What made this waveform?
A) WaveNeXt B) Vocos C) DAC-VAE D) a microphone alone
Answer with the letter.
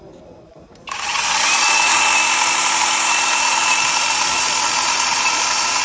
D